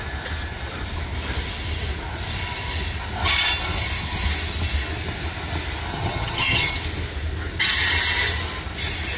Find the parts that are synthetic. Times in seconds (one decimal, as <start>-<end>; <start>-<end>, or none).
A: 5.9-6.7